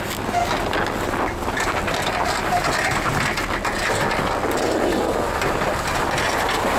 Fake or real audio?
real